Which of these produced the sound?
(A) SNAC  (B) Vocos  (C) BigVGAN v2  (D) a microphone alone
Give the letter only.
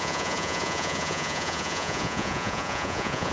B